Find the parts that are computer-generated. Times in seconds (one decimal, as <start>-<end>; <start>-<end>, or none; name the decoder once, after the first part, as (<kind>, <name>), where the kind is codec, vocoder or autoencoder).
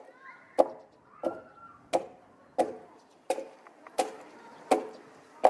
3.1-4.4 (vocoder, BigVGAN v2)